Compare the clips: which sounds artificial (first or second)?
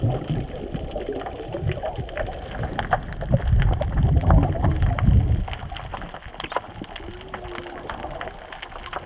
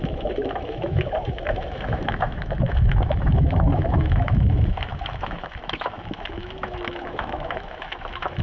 second